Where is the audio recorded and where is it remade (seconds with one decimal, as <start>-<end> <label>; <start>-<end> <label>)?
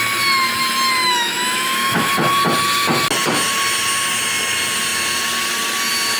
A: 0.0-1.0 recorded; 1.0-2.1 remade; 2.1-6.2 recorded